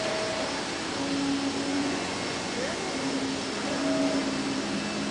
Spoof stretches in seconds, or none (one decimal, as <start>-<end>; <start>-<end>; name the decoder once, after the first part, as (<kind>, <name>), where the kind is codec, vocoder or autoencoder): 1.7-2.6 (vocoder, Vocos)